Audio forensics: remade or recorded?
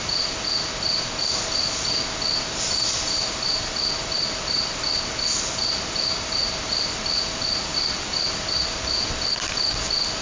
recorded